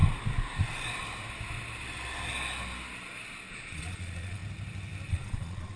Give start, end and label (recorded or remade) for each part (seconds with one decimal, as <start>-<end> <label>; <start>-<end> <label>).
0.0-3.5 recorded; 3.5-4.4 remade; 4.4-5.1 recorded; 5.1-5.8 remade

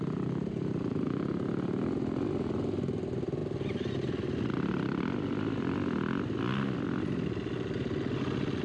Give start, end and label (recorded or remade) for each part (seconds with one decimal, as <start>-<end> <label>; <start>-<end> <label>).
0.0-8.6 recorded